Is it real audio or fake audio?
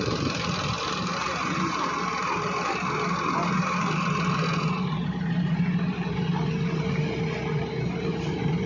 real